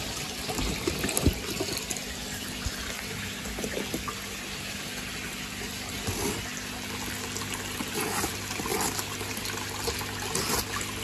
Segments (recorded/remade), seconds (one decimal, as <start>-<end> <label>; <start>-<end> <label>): 0.0-11.0 recorded